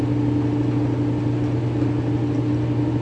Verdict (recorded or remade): recorded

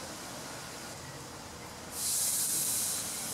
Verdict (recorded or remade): recorded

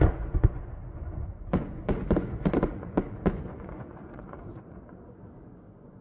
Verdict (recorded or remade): remade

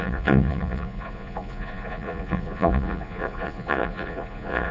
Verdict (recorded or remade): remade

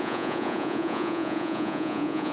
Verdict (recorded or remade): remade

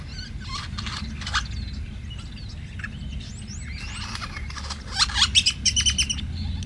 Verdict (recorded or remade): recorded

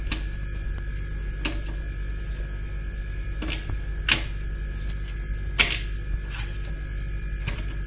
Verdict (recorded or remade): recorded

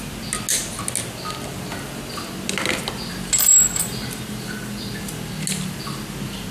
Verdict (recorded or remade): recorded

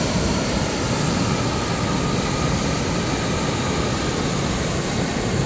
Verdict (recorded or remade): recorded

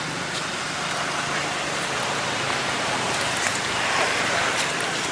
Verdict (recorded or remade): recorded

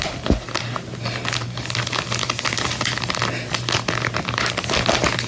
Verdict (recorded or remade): recorded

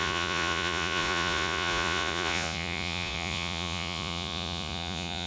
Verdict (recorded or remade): remade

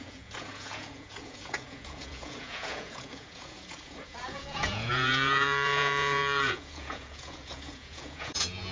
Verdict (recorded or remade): remade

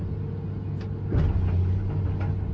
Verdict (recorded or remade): recorded